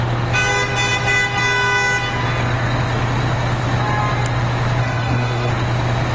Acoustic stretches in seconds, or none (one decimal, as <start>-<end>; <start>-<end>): 0.0-4.8; 5.5-6.1